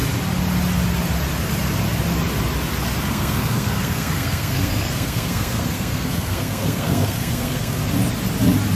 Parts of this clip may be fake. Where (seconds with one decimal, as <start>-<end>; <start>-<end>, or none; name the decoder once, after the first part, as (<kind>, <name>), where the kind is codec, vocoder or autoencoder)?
3.0-7.8 (codec, SNAC)